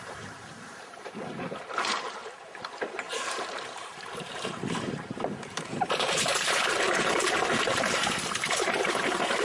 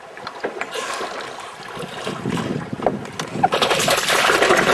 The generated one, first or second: first